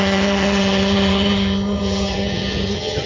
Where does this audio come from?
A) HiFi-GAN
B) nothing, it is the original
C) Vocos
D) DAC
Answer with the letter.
A